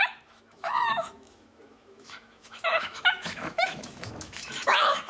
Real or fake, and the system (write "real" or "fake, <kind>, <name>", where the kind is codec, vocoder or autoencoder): fake, autoencoder, DAC-VAE